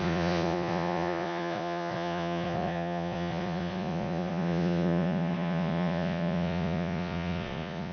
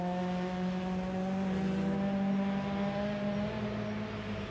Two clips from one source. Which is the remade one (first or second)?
first